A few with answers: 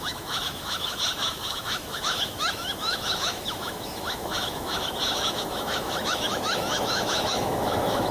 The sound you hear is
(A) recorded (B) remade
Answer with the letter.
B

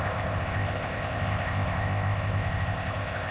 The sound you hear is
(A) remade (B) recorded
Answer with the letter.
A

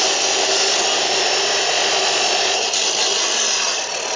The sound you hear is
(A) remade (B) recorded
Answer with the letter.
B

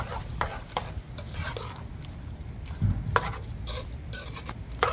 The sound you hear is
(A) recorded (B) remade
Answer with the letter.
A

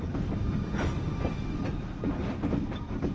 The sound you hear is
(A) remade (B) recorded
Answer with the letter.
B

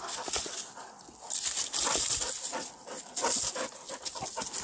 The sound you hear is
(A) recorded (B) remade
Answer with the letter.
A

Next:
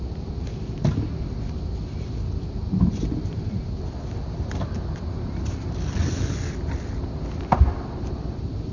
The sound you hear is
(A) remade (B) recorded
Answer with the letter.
B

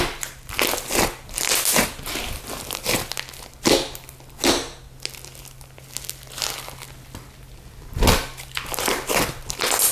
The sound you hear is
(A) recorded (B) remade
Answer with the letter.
A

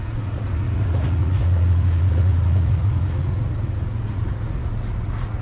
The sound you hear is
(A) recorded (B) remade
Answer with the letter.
B